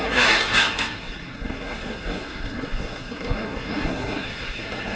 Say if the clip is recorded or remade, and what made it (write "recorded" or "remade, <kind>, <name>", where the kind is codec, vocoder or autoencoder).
remade, codec, SNAC